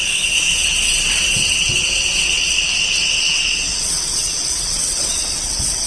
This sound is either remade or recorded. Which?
remade